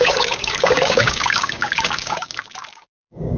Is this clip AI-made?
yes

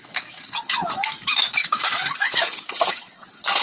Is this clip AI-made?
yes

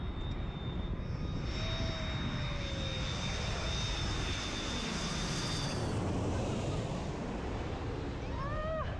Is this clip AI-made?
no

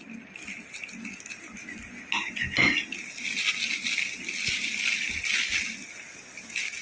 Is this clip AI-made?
no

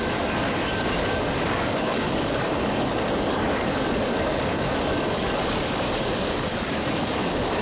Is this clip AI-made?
yes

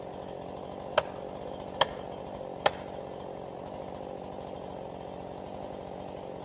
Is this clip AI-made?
no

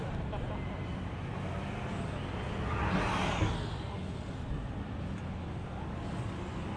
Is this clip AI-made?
no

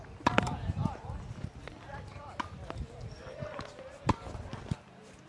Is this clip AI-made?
no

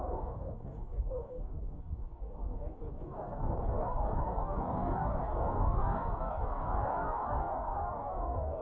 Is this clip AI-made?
yes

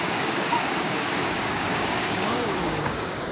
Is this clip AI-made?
yes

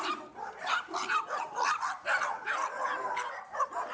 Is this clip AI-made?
no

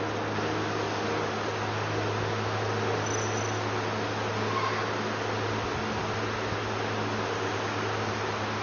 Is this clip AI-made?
no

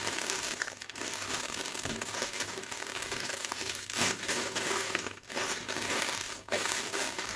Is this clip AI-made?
yes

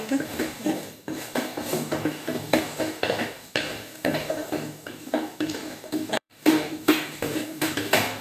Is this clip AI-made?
yes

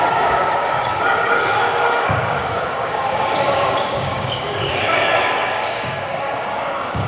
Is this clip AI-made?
yes